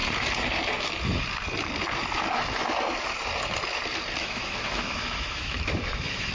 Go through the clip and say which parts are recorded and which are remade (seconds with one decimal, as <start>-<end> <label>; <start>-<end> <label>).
0.0-4.2 recorded; 4.2-6.3 remade